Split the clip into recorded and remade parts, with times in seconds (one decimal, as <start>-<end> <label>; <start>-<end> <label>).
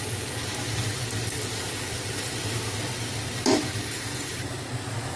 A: 0.0-3.6 recorded; 3.6-5.2 remade